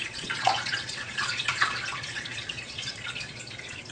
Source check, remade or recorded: remade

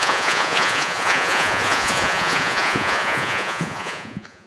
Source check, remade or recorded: remade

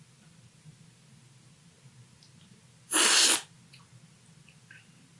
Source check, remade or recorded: recorded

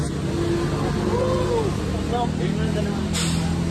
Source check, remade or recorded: recorded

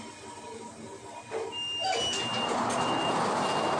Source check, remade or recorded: recorded